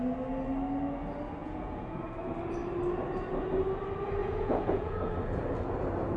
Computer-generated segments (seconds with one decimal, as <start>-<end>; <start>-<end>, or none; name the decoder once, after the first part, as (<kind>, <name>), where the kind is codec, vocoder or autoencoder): 1.4-2.0 (vocoder, Vocos); 4.2-5.1